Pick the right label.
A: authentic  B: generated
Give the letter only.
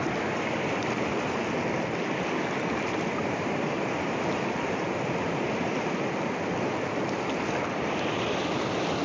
B